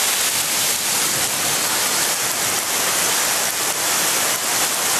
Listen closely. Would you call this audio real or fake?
real